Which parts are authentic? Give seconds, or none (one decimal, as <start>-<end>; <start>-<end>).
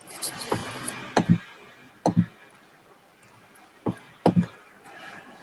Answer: 0.6-3.3